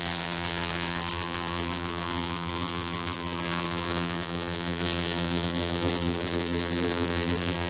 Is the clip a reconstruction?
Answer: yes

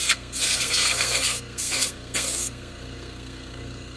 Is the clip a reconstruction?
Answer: yes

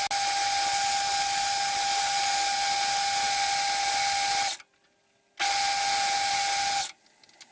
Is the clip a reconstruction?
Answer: no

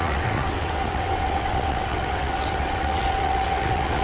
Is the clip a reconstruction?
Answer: yes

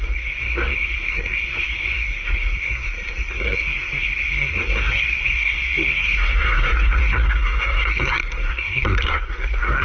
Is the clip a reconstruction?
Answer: yes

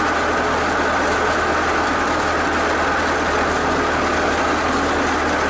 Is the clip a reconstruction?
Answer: no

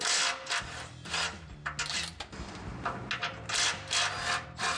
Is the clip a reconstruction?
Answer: no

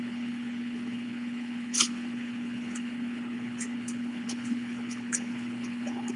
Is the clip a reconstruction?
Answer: yes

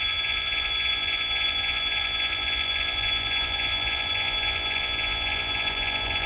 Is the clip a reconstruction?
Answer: yes